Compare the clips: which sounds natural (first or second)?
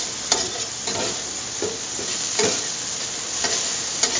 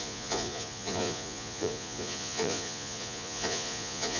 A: first